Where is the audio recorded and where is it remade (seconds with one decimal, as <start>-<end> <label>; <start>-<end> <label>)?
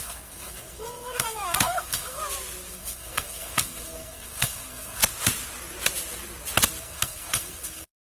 0.0-2.2 remade; 2.2-2.7 recorded; 2.7-5.0 remade; 5.0-6.8 recorded; 6.8-8.2 remade